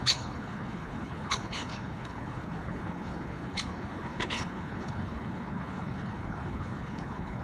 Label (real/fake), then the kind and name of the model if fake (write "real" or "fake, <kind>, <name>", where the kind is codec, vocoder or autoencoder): fake, codec, HILCodec